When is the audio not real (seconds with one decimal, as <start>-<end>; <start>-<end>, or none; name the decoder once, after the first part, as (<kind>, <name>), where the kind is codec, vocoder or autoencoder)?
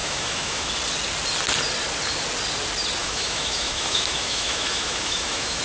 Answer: 0.0-0.7 (autoencoder, DAC-VAE); 3.0-5.6